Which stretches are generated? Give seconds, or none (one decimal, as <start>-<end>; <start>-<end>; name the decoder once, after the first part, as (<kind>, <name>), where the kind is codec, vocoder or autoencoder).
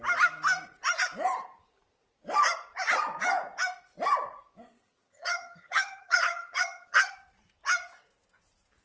4.8-7.1 (vocoder, HiFi-GAN)